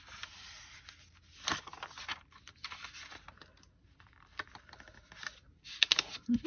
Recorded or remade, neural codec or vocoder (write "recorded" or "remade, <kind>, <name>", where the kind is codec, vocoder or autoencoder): recorded